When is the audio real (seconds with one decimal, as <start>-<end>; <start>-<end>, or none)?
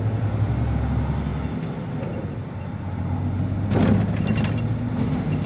0.0-5.5